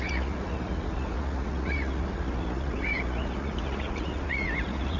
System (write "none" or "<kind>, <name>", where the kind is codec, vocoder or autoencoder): vocoder, Vocos